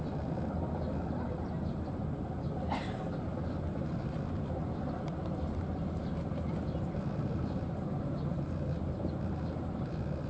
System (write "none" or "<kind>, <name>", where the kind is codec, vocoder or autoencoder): none